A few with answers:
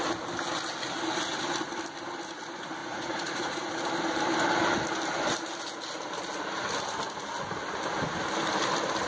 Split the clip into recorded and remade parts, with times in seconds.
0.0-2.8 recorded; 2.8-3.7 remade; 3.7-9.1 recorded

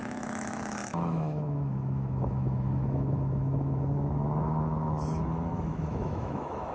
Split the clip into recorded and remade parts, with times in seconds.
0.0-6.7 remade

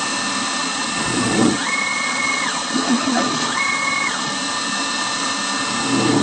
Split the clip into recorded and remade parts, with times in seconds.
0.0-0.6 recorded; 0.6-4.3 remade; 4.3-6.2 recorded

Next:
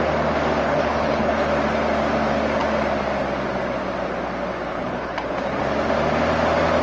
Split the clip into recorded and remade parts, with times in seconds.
0.0-0.6 recorded; 0.6-1.5 remade; 1.5-4.7 recorded; 4.7-5.6 remade; 5.6-6.8 recorded

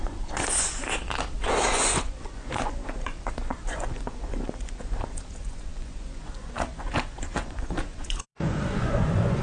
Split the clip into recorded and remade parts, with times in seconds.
0.0-0.8 remade; 0.8-1.7 recorded; 1.7-9.4 remade

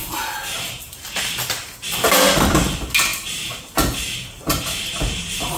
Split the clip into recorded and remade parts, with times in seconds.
0.0-0.8 remade; 0.8-5.6 recorded

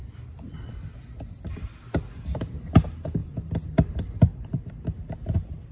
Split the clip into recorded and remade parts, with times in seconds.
0.0-2.5 remade; 2.5-3.2 recorded; 3.2-4.7 remade; 4.7-5.7 recorded

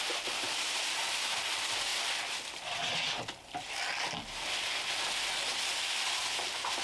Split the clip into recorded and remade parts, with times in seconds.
0.0-6.8 recorded